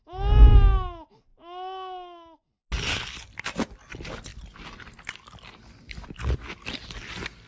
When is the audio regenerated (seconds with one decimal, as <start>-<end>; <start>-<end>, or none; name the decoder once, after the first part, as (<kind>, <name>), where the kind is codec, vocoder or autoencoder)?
none